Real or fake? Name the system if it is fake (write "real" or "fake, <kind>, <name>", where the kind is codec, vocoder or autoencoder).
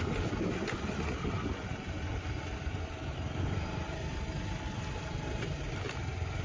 real